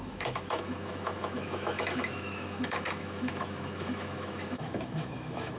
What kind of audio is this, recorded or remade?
remade